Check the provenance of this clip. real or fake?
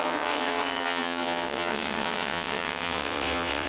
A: fake